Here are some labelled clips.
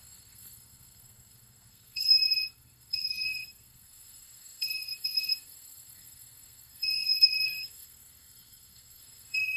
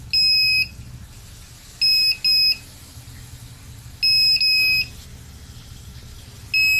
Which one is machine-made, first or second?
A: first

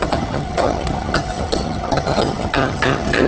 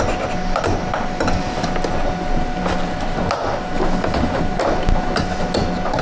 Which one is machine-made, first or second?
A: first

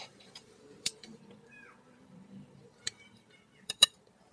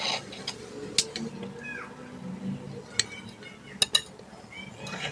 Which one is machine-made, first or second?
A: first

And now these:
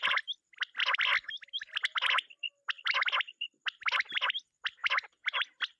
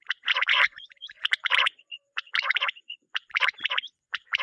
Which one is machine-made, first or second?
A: second